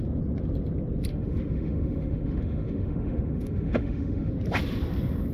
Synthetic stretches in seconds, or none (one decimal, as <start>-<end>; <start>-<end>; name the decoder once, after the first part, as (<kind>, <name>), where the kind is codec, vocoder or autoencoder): 1.1-4.3 (autoencoder, DAC-VAE)